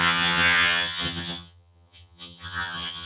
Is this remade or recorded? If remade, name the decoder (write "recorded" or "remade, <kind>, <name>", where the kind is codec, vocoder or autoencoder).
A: remade, vocoder, HiFi-GAN